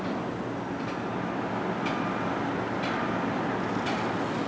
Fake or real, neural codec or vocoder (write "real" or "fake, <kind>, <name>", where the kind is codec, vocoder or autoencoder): real